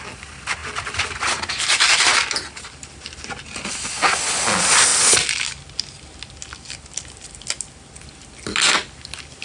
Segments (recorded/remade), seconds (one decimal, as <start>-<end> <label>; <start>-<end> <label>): 0.0-9.4 recorded